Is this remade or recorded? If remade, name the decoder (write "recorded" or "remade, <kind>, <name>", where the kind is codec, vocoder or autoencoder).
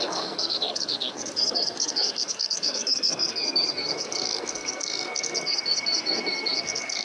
remade, codec, SNAC